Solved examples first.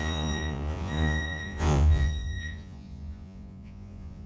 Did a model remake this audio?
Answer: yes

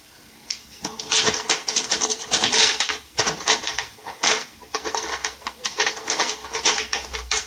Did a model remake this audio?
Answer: yes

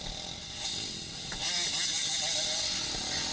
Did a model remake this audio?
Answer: no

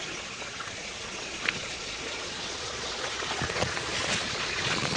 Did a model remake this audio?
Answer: yes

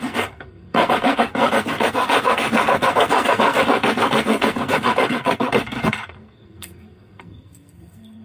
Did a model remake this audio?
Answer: yes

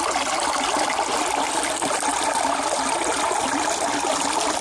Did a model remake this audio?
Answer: no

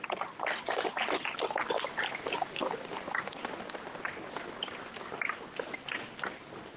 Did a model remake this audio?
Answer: yes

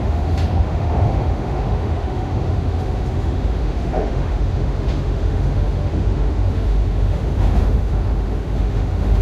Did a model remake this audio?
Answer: yes